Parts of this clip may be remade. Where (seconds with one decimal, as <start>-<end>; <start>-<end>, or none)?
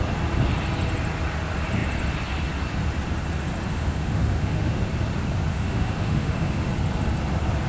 3.7-4.8; 5.5-6.7